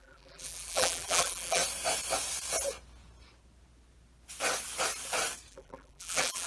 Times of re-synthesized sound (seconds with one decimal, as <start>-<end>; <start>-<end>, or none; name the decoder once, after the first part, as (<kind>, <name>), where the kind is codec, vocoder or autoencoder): 0.0-1.6 (vocoder, BigVGAN v2); 5.5-6.5